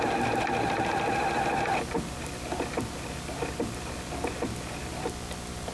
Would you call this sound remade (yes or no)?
no